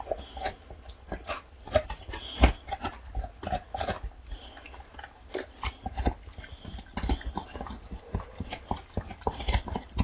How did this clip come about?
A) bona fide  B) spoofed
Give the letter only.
A